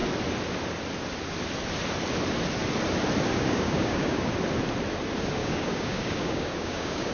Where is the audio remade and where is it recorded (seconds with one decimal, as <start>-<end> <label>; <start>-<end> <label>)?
0.0-3.3 recorded; 3.3-4.3 remade; 4.3-5.4 recorded; 5.4-7.1 remade